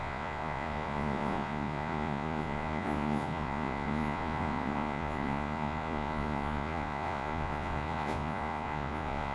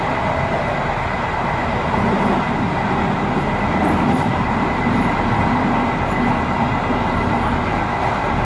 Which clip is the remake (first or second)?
first